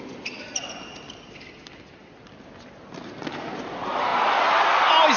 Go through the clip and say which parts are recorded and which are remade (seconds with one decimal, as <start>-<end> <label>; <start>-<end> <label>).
0.0-5.2 recorded